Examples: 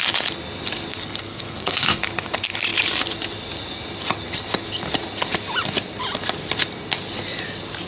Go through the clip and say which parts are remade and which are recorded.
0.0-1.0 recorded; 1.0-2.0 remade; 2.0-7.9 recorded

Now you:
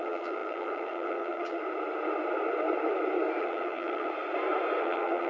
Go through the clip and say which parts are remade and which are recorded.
0.0-1.6 remade; 1.6-3.4 recorded; 3.4-4.1 remade; 4.1-4.8 recorded; 4.8-5.3 remade

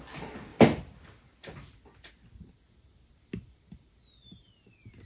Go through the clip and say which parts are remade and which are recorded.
0.0-5.1 recorded

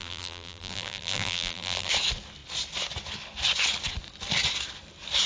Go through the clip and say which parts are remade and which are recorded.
0.0-1.9 remade; 1.9-5.3 recorded

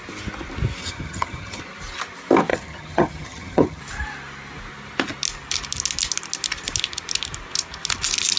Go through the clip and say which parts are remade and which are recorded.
0.0-0.8 recorded; 0.8-1.6 remade; 1.6-2.5 recorded; 2.5-3.8 remade; 3.8-8.4 recorded

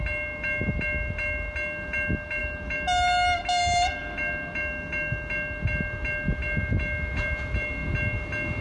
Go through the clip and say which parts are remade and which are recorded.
0.0-8.6 recorded

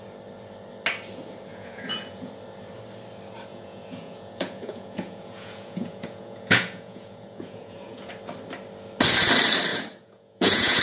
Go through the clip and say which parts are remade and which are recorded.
0.0-1.5 recorded; 1.5-2.3 remade; 2.3-3.5 recorded; 3.5-8.1 remade; 8.1-9.7 recorded; 9.7-10.8 remade

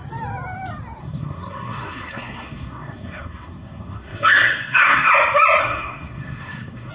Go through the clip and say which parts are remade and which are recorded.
0.0-1.0 recorded; 1.0-5.1 remade; 5.1-5.6 recorded; 5.6-6.9 remade